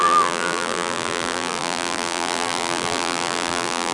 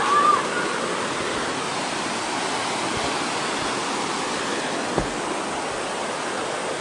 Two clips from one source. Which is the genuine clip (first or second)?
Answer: second